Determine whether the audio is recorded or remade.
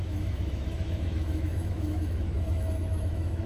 remade